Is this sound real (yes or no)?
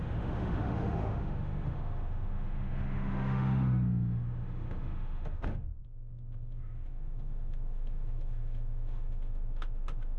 no